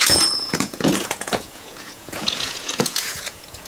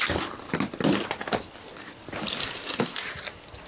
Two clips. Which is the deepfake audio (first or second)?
first